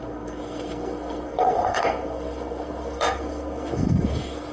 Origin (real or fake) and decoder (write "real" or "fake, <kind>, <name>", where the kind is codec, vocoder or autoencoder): fake, codec, SNAC